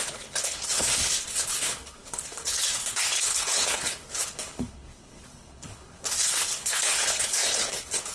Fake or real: fake